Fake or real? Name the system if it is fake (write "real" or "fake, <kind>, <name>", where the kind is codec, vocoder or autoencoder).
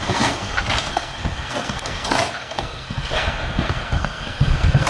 fake, codec, SNAC